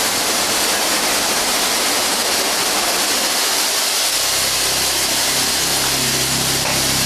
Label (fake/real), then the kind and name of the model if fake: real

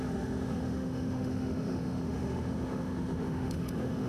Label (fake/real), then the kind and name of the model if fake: fake, autoencoder, DAC-VAE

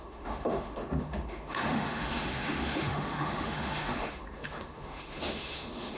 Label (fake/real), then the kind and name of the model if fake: fake, autoencoder, DAC-VAE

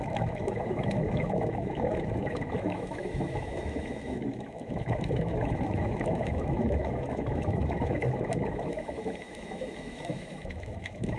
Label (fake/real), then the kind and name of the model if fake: fake, autoencoder, DAC-VAE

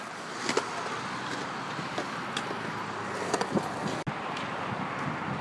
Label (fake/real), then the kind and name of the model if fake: real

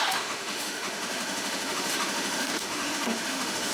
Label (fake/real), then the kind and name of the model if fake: fake, autoencoder, DAC-VAE